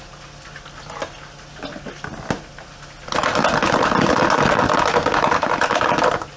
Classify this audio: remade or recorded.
recorded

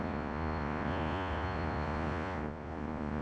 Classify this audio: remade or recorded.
remade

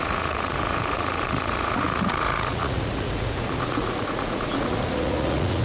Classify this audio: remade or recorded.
remade